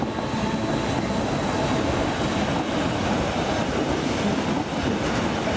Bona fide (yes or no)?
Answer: yes